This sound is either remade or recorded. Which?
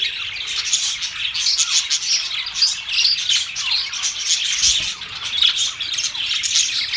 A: recorded